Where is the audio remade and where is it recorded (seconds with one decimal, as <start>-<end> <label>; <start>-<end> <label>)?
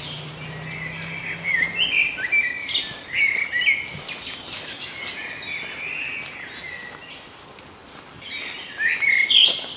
0.0-9.8 recorded